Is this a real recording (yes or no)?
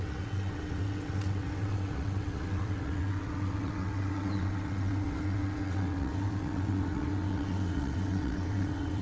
no